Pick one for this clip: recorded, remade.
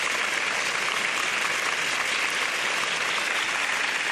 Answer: recorded